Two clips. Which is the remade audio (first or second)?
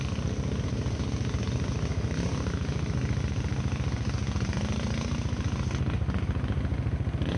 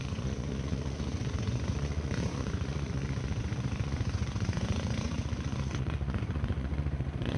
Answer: second